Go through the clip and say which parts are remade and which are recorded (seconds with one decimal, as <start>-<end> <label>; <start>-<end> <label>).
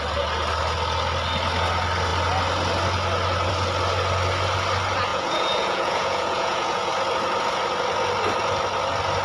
0.0-5.1 recorded; 5.1-6.9 remade; 6.9-9.2 recorded